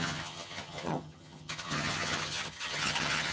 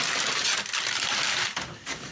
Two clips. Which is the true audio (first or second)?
second